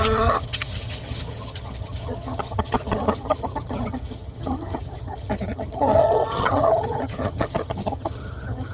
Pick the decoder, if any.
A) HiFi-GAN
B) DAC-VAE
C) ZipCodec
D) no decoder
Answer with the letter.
A